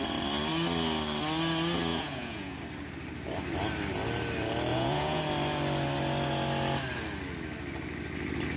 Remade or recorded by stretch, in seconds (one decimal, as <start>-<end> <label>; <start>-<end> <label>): 0.0-1.9 recorded; 1.9-2.6 remade; 2.6-4.7 recorded; 4.7-5.2 remade; 5.2-8.6 recorded